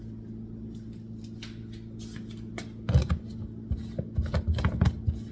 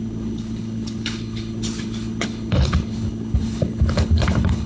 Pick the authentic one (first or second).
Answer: first